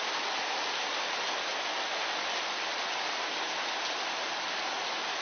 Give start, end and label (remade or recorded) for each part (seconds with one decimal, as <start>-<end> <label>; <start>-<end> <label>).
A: 0.0-5.2 recorded